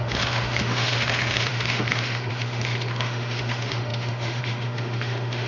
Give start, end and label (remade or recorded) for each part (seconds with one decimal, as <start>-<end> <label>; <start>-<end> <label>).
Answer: 0.0-5.5 remade